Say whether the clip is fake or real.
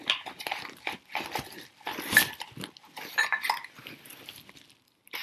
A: real